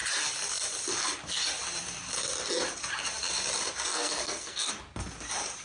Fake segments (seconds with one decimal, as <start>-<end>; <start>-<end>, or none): 3.9-4.7